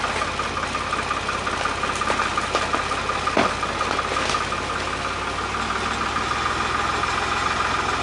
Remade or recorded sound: recorded